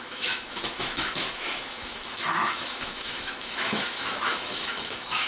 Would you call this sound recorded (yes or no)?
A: no